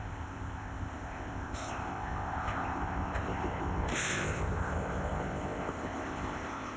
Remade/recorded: remade